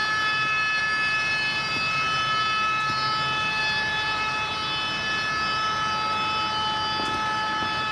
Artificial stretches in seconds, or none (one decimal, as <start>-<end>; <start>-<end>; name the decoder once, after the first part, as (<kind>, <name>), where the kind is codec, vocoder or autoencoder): 0.0-1.7 (vocoder, BigVGAN v2); 3.6-4.5